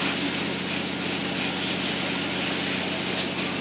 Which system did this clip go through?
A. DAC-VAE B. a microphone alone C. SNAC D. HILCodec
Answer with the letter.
B